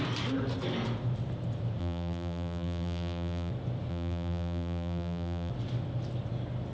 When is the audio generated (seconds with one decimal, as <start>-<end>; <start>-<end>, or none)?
1.8-3.5; 3.9-5.5